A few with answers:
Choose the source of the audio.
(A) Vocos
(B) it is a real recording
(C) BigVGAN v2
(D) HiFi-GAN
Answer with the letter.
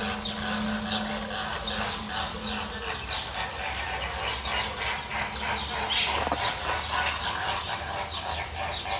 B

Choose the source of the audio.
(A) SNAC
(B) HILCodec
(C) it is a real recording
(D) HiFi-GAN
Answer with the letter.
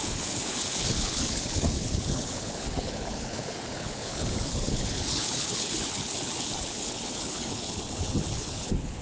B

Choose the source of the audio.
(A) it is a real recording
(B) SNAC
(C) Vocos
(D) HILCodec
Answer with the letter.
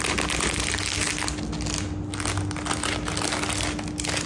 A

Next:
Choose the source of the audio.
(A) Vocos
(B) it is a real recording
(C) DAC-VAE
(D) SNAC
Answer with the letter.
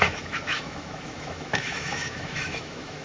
C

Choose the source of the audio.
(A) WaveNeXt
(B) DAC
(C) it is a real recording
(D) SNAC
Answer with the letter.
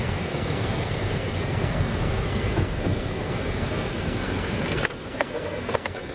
D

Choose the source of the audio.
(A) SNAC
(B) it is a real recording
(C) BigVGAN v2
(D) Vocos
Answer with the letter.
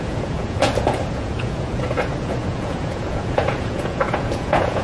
D